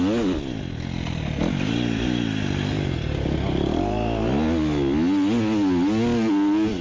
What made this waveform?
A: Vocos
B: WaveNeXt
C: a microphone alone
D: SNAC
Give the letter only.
C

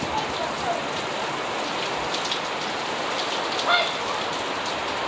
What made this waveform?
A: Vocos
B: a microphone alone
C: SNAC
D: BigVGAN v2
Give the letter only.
B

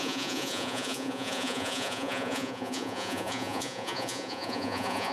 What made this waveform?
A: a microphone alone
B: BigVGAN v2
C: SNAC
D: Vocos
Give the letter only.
D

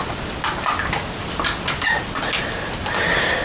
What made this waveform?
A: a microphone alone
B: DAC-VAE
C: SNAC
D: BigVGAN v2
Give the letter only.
A